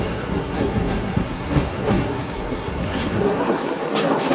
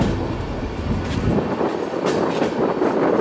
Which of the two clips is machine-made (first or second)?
first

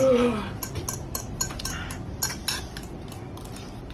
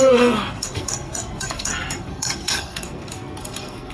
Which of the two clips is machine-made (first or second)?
second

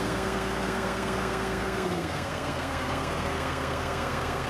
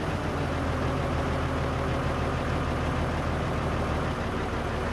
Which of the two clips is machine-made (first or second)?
first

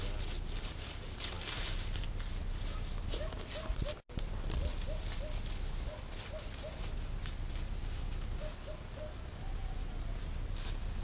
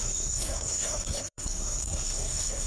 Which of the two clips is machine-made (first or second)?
second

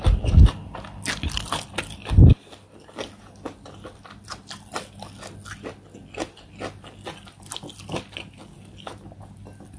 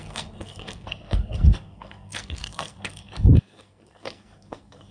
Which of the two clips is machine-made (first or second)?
second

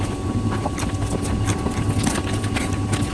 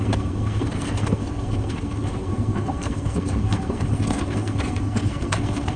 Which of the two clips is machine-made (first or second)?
second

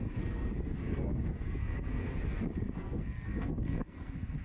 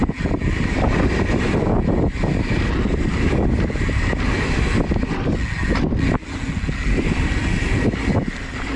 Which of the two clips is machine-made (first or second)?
first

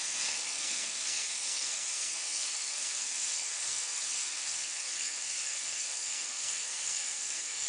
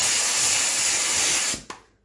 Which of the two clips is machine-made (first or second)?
first